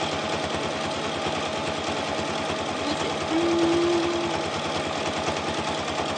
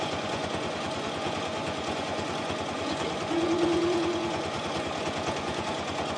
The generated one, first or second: second